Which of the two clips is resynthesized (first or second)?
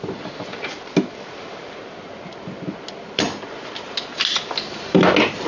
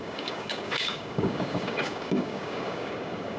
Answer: second